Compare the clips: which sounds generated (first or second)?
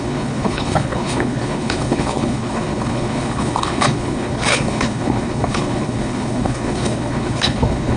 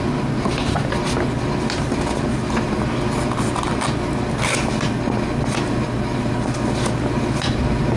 first